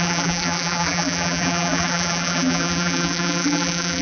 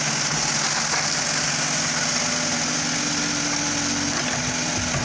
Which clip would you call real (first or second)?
second